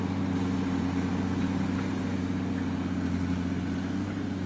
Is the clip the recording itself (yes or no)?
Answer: yes